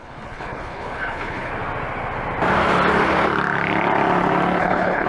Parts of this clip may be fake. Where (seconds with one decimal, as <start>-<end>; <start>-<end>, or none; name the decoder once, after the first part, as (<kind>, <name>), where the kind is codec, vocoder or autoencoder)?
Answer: 0.0-1.5 (codec, HILCodec); 4.6-5.1